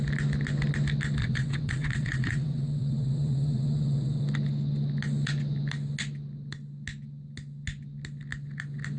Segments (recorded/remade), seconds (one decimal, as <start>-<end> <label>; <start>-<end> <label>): 0.0-1.2 recorded; 1.2-4.2 remade; 4.2-9.0 recorded